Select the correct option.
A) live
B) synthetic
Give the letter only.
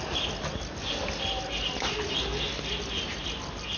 A